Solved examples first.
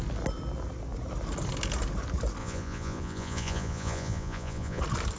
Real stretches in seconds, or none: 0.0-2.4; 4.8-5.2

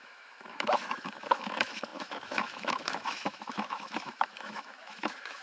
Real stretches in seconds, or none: none

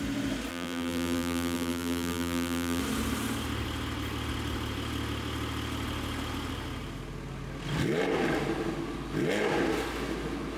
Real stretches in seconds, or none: 0.0-0.5; 2.8-10.6

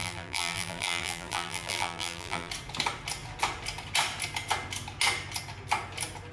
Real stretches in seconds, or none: 2.5-6.3

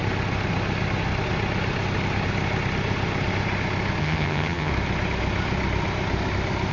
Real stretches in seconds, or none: 0.0-4.0; 4.7-6.7

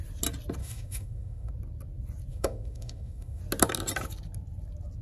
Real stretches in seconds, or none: 0.0-0.6; 1.5-2.3; 3.4-5.0